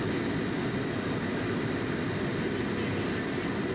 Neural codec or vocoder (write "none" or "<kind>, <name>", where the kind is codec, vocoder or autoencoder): none